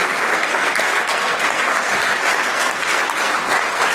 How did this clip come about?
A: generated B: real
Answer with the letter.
A